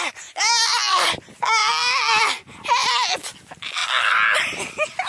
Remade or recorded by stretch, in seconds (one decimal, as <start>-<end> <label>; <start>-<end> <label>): 0.0-5.1 recorded